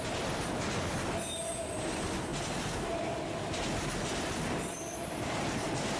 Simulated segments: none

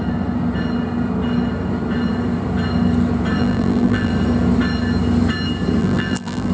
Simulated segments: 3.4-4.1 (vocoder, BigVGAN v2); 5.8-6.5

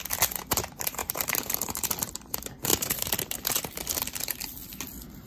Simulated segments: 1.0-1.9 (vocoder, BigVGAN v2); 2.7-3.7

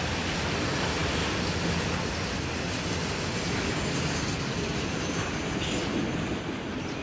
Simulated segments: none

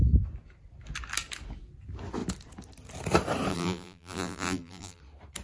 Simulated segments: 3.5-5.0 (vocoder, BigVGAN v2)

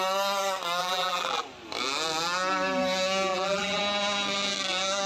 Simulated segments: 0.8-1.4 (vocoder, BigVGAN v2); 3.3-3.8

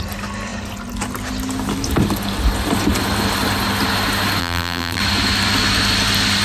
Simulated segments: 4.4-5.0 (vocoder, BigVGAN v2)